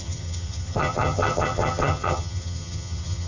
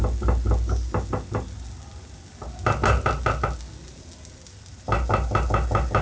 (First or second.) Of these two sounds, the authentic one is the second